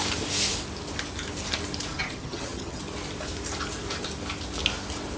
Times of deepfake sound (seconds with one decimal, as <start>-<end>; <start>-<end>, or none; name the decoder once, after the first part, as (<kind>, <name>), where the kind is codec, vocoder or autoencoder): 1.9-2.8 (vocoder, HiFi-GAN)